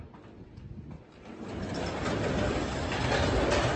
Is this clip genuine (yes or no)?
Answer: yes